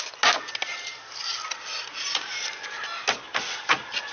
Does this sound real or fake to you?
real